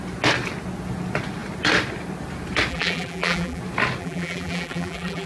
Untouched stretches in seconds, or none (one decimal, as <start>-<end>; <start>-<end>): 0.0-2.7; 3.6-4.0